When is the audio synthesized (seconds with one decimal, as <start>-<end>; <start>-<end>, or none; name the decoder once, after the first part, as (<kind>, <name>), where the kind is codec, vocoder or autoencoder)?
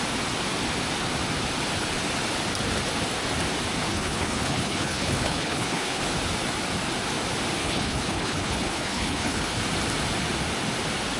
3.9-6.0 (codec, HILCodec); 7.6-9.6